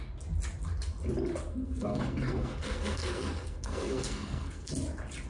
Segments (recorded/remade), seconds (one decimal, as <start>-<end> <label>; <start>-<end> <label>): 0.0-1.5 recorded; 1.5-4.7 remade; 4.7-5.3 recorded